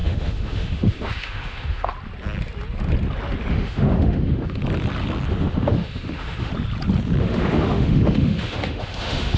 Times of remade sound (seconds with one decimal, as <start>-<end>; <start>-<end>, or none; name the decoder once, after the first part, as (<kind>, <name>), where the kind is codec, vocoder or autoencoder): 0.0-1.9 (autoencoder, DAC-VAE); 3.5-4.6; 5.3-6.5; 7.2-9.4